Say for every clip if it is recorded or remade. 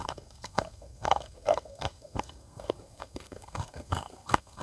remade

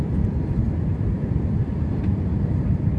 recorded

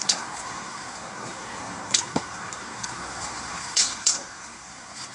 remade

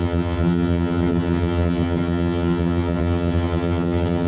remade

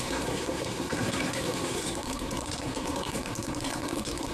remade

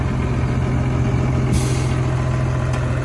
recorded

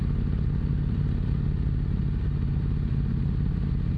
recorded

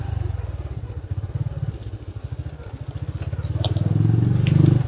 recorded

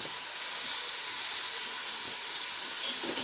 recorded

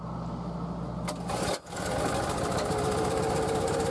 recorded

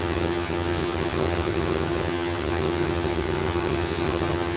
remade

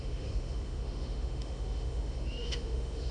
remade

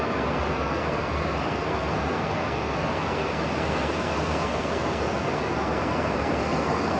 remade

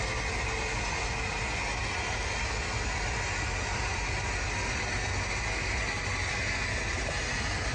recorded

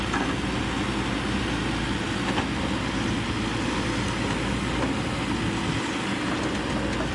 recorded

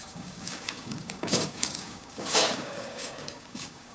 remade